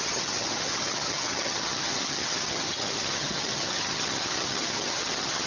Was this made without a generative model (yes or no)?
no